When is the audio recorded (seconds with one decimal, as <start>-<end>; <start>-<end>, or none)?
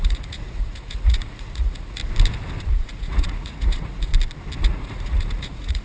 2.0-2.6; 4.1-4.6